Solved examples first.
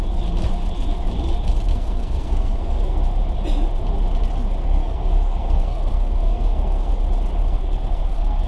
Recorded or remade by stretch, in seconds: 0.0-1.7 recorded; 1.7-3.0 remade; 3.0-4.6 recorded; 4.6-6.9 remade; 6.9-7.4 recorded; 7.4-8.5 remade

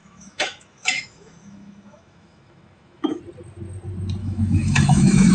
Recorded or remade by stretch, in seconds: 0.0-3.2 remade; 3.2-4.2 recorded; 4.2-5.3 remade

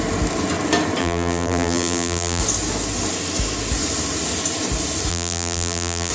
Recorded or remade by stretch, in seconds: 0.0-1.0 recorded; 1.0-2.4 remade; 2.4-5.1 recorded; 5.1-6.1 remade

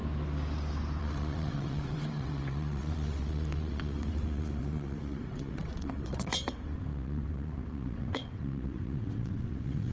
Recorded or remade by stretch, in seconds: 0.0-1.0 recorded; 1.0-9.9 remade

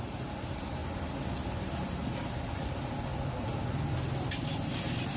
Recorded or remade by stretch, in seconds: 0.0-0.8 remade; 0.8-2.1 recorded; 2.1-3.1 remade; 3.1-4.8 recorded; 4.8-5.2 remade